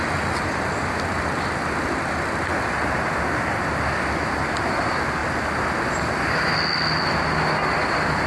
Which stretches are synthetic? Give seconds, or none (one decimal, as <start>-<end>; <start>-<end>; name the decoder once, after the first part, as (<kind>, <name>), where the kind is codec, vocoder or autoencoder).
none